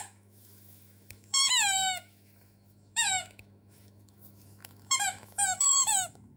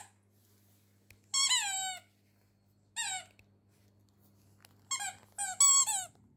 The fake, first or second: first